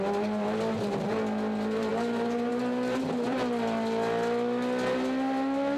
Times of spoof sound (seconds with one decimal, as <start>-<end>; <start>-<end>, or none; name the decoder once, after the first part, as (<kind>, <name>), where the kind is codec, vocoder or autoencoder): none